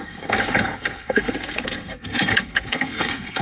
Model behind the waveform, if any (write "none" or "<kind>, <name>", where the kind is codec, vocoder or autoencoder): codec, SNAC